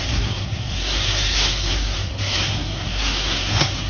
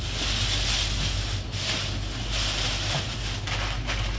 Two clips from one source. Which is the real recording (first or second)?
second